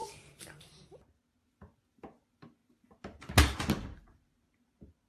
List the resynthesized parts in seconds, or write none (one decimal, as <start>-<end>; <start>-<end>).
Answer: none